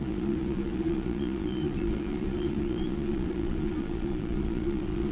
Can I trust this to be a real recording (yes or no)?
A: no